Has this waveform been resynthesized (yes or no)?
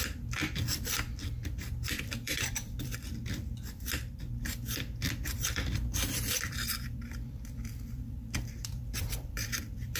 yes